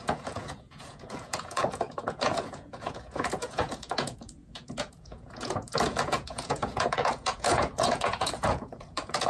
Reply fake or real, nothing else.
fake